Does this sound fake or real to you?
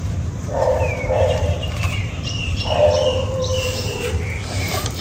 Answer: fake